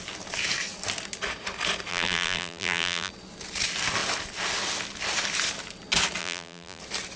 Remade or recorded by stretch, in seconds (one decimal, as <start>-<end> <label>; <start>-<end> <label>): 0.0-1.9 recorded; 1.9-3.1 remade; 3.1-6.2 recorded; 6.2-6.8 remade; 6.8-7.2 recorded